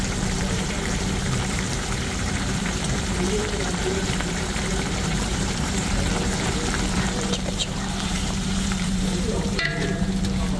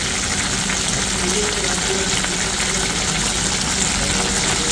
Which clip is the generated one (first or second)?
first